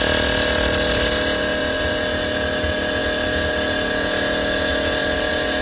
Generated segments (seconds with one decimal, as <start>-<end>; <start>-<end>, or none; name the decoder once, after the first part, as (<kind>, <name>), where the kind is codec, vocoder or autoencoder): none